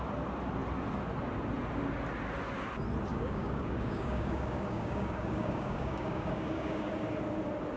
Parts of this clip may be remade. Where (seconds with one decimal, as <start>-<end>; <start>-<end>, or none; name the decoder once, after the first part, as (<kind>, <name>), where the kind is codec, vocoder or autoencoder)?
3.1-6.9 (codec, DAC)